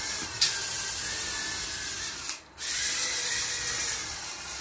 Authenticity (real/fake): real